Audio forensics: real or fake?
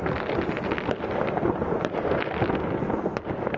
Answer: real